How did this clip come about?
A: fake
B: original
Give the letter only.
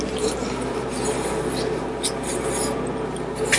B